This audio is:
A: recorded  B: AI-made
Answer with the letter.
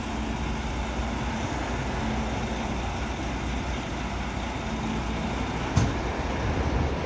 A